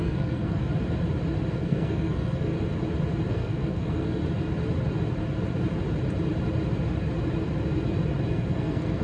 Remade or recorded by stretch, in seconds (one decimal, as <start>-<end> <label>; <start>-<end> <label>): 0.0-0.6 remade; 0.6-1.5 recorded; 1.5-2.5 remade; 2.5-3.3 recorded; 3.3-4.2 remade; 4.2-8.3 recorded; 8.3-9.0 remade